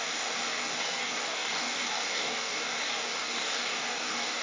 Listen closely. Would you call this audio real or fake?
fake